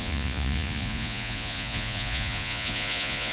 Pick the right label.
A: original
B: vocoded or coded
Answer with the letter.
B